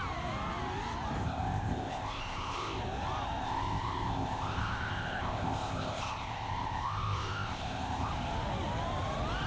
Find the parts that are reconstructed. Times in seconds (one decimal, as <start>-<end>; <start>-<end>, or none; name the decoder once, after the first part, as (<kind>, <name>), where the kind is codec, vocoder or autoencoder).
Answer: 1.2-2.8 (codec, ZipCodec); 3.4-8.1